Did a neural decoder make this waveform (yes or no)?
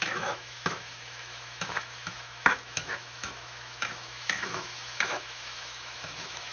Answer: yes